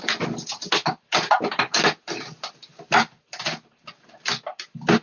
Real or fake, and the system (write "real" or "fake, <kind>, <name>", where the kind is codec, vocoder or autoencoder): real